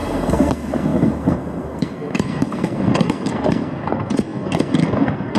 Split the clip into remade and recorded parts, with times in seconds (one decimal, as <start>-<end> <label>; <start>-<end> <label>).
0.0-5.4 remade